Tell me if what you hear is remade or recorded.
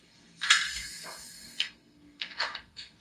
remade